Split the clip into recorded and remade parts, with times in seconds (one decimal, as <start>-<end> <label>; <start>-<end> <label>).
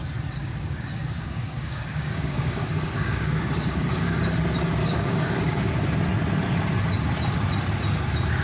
0.0-0.4 recorded; 0.4-4.2 remade; 4.2-4.8 recorded; 4.8-5.7 remade; 5.7-8.4 recorded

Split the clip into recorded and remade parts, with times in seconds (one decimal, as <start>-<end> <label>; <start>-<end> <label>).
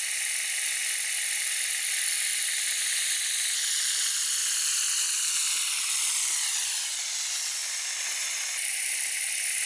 0.0-2.3 recorded; 2.3-2.9 remade; 2.9-4.4 recorded; 4.4-5.3 remade; 5.3-7.6 recorded; 7.6-9.7 remade